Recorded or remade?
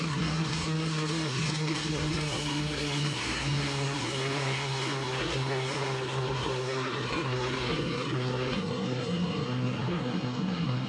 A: remade